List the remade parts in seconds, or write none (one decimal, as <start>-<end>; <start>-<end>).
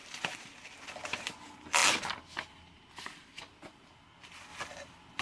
none